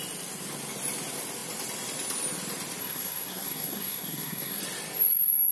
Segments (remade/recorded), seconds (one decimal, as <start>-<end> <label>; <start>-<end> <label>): 0.0-2.8 recorded; 2.8-4.6 remade; 4.6-5.5 recorded